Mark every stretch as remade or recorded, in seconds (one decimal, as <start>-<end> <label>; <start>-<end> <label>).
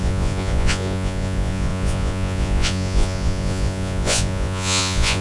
0.0-5.2 remade